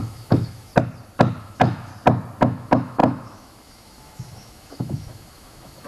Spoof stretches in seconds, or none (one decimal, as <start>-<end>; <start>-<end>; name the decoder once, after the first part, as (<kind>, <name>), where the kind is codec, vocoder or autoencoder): 0.0-0.7 (autoencoder, DAC-VAE); 1.4-1.9; 2.4-5.9